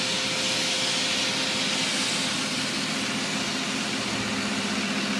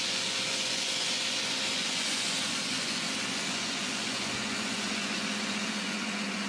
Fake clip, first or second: second